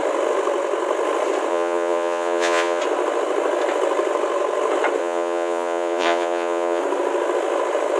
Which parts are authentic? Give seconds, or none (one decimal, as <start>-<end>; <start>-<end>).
0.0-1.5; 2.8-5.0; 6.8-8.0